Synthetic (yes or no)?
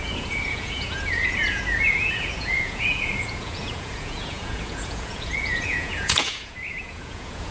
yes